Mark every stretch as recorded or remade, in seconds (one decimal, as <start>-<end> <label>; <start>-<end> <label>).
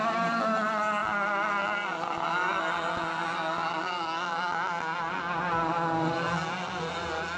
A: 0.0-7.4 recorded